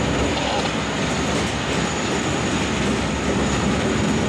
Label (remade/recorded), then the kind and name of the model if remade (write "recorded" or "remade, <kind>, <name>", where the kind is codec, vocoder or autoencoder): recorded